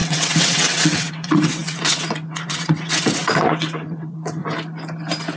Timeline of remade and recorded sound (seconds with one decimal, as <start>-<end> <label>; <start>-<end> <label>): 0.0-4.4 remade; 4.4-5.4 recorded